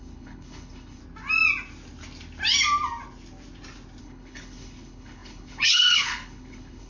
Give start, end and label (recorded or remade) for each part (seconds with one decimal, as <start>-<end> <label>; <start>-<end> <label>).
0.0-1.0 remade; 1.0-4.0 recorded; 4.0-6.9 remade